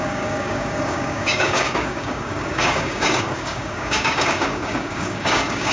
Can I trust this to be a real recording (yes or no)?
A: no